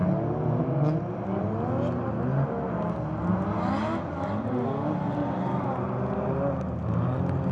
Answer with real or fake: real